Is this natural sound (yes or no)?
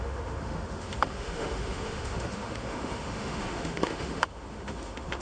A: no